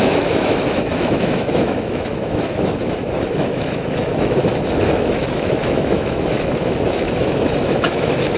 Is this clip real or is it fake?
fake